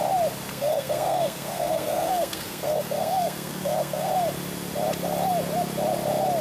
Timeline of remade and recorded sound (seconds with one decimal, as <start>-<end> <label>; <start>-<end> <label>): 0.0-0.5 recorded; 0.5-4.1 remade; 4.1-6.4 recorded